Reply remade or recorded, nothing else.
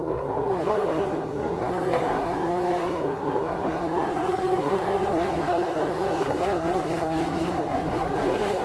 remade